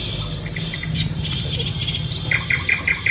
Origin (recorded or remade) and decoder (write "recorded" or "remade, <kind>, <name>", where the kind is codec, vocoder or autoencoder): recorded